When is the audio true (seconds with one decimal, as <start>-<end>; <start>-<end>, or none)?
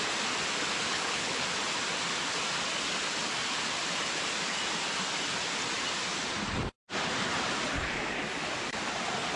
0.0-0.9; 1.4-9.4